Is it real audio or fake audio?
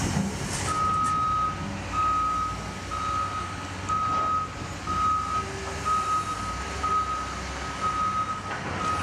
real